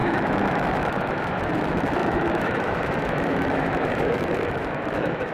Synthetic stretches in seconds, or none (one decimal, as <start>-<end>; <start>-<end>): 0.0-5.3